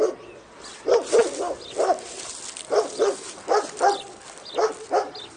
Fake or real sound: real